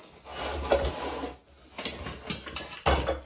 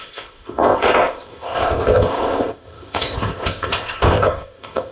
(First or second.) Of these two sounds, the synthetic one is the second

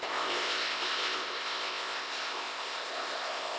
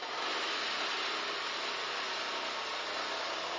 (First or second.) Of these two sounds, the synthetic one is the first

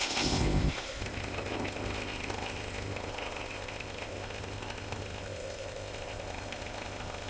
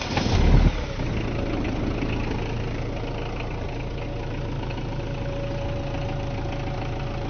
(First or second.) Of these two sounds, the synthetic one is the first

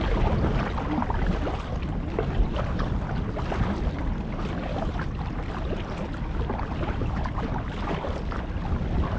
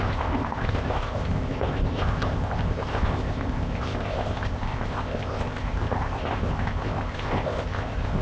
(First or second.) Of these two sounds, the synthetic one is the second